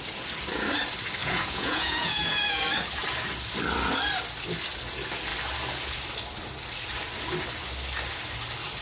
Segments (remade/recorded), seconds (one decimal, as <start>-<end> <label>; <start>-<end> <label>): 0.0-1.2 recorded; 1.2-2.6 remade; 2.6-8.8 recorded